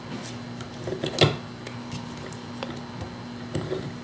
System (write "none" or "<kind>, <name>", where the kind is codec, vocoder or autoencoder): none